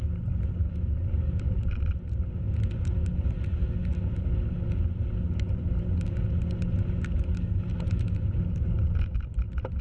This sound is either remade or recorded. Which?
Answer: recorded